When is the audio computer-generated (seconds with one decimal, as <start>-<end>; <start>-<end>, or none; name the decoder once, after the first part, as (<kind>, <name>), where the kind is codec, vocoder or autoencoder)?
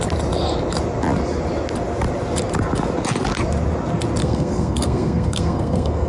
4.2-6.1 (codec, SNAC)